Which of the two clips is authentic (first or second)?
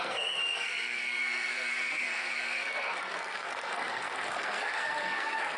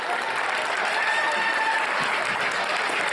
second